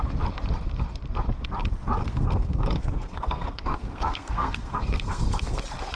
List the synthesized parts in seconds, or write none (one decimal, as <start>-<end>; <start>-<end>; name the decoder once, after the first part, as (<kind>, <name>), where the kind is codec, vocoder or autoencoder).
2.0-5.6 (codec, SNAC)